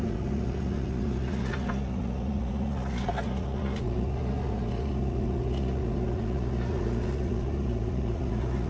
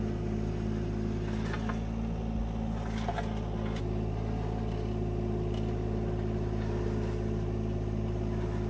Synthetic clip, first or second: first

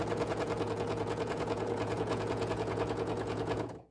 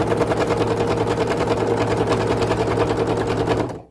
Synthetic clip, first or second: first